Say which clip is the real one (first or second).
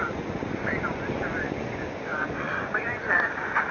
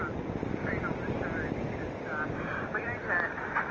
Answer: second